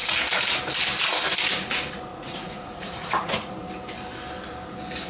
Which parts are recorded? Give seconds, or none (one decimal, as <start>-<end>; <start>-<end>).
0.0-2.1; 3.5-5.1